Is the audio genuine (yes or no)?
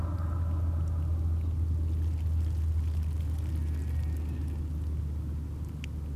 yes